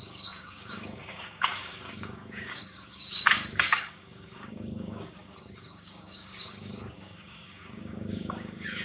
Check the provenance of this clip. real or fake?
fake